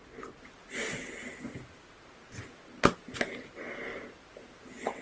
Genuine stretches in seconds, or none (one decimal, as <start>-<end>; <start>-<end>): 0.0-5.0